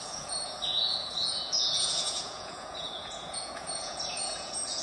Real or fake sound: fake